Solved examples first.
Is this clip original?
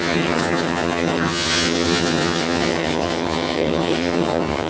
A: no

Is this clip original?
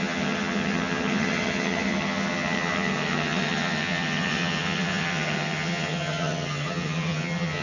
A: no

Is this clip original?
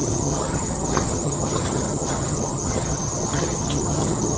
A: no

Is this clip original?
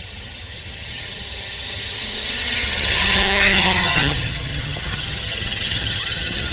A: no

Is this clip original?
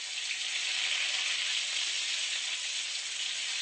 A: yes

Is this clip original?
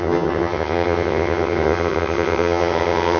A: no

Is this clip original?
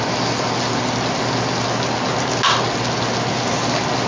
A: yes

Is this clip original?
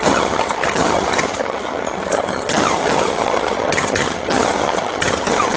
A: no